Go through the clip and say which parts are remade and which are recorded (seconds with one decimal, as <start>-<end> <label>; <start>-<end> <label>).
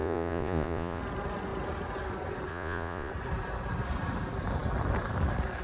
0.0-1.0 remade; 1.0-2.5 recorded; 2.5-3.1 remade; 3.1-5.6 recorded